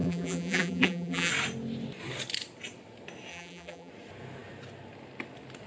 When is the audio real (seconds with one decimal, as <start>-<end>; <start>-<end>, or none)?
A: 1.3-3.3; 3.9-5.7